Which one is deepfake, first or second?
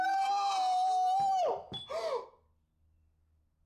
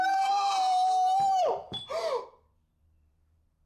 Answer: second